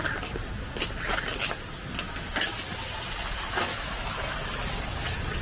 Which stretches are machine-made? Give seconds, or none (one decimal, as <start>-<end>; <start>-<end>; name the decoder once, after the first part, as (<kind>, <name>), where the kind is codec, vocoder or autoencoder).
3.7-4.2 (autoencoder, DAC-VAE)